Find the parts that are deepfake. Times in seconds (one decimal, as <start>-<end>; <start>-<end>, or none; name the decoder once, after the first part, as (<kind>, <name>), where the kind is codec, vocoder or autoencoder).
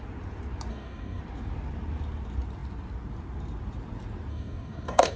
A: 0.7-1.2 (codec, DAC); 4.3-5.2